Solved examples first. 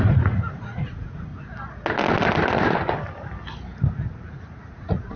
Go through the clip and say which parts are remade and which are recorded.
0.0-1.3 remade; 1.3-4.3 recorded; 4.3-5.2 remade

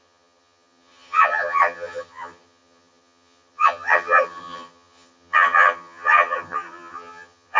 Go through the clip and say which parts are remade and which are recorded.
0.0-7.6 remade